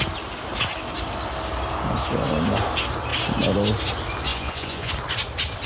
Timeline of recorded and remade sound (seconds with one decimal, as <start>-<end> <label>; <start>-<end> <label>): 0.0-4.3 recorded; 4.3-4.9 remade; 4.9-5.7 recorded